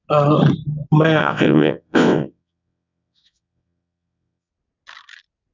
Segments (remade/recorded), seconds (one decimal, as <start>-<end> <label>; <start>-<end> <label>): 0.0-1.2 recorded; 1.2-4.5 remade; 4.5-5.5 recorded